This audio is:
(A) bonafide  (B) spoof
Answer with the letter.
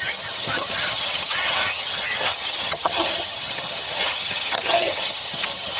B